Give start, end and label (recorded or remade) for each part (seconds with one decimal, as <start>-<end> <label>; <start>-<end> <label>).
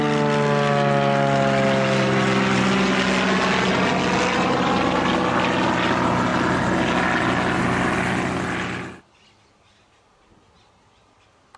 0.0-11.6 recorded